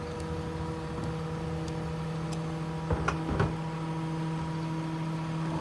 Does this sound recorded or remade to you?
recorded